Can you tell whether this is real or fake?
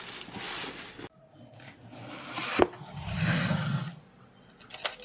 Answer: real